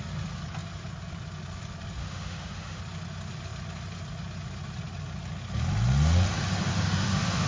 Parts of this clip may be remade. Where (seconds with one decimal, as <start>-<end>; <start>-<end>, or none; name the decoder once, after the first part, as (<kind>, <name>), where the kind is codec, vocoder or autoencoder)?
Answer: 2.0-2.8 (autoencoder, DAC-VAE); 6.7-7.5